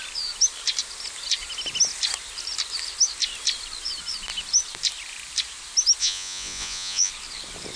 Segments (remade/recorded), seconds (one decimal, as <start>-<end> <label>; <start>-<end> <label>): 0.0-6.0 recorded; 6.0-7.1 remade; 7.1-7.8 recorded